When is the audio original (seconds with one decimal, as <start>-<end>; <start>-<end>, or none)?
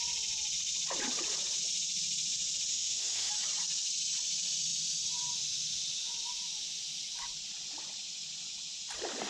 0.0-2.7; 3.3-9.3